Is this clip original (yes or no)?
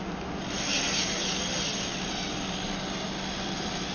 yes